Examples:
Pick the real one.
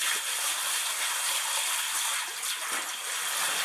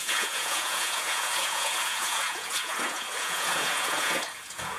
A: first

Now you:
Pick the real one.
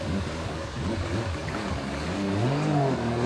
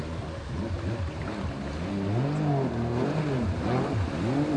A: second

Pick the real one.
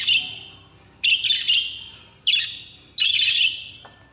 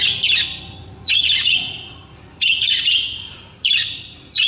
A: first